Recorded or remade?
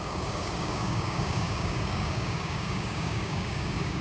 remade